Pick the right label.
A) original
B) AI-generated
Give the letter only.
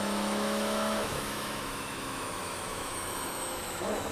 B